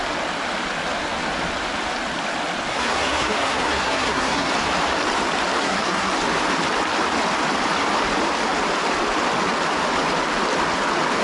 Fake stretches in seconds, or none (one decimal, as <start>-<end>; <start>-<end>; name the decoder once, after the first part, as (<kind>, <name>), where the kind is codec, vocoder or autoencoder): 2.7-4.5 (codec, SNAC); 5.6-6.1